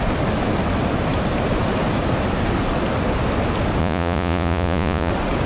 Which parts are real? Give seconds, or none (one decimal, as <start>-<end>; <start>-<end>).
0.0-3.8; 5.1-5.5